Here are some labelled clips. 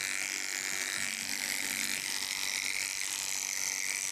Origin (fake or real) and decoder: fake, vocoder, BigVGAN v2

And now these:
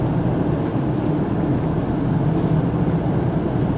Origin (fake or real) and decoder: real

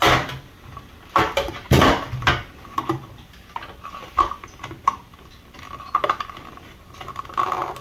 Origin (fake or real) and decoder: real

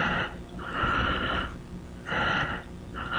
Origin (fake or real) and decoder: fake, vocoder, BigVGAN v2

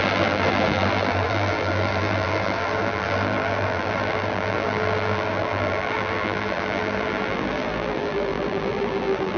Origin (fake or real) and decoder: fake, vocoder, BigVGAN v2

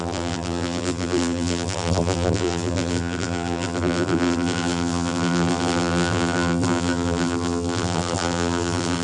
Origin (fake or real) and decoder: fake, vocoder, BigVGAN v2